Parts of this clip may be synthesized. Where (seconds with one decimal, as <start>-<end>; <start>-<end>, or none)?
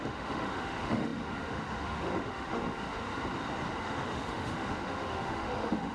0.0-3.1; 3.8-5.9